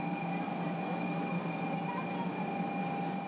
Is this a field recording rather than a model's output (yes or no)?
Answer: yes